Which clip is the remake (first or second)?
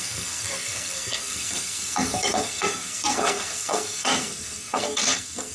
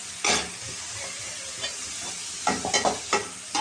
first